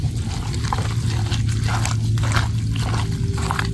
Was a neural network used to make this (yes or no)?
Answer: no